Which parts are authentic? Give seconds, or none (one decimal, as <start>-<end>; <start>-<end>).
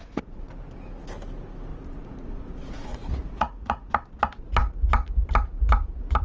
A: 0.5-1.7; 3.9-6.2